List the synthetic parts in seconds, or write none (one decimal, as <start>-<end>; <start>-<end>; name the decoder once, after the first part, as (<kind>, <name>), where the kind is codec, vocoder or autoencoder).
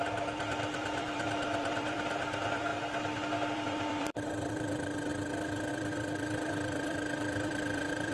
0.0-2.7 (vocoder, BigVGAN v2); 3.3-5.1; 5.7-8.1